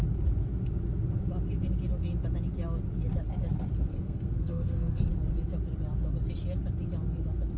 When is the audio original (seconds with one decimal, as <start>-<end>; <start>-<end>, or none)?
0.0-3.9; 5.1-7.6